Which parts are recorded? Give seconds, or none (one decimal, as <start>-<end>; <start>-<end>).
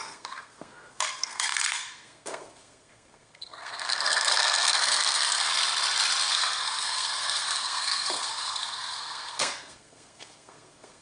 5.5-6.3